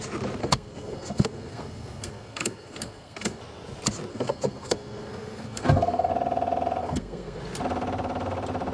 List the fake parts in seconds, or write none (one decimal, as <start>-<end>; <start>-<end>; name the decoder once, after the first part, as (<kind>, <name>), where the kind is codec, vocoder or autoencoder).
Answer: 0.4-3.4 (codec, SNAC); 4.1-6.1; 6.8-7.4

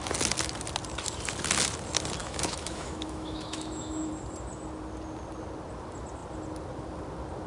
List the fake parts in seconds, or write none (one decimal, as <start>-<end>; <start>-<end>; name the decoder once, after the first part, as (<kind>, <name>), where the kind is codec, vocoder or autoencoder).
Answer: 2.2-4.1 (autoencoder, DAC-VAE)

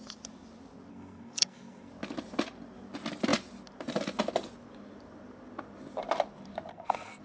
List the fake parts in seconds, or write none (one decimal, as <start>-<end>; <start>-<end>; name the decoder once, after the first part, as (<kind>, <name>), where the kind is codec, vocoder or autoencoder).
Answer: 0.9-1.9 (codec, SNAC); 6.7-7.2